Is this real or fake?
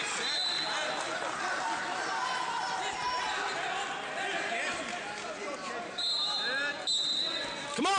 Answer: real